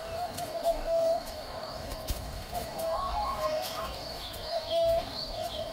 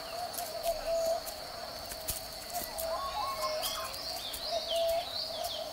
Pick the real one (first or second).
second